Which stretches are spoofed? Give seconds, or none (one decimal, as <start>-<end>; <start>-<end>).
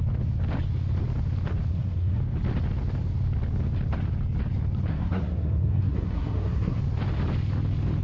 1.7-2.2; 4.9-6.8